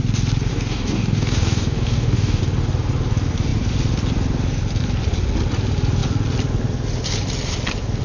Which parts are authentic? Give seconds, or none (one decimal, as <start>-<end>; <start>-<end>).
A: 0.0-0.5; 2.4-8.0